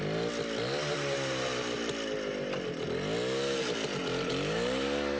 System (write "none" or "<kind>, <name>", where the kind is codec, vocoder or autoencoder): none